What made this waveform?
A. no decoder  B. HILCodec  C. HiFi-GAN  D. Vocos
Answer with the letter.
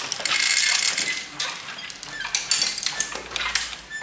A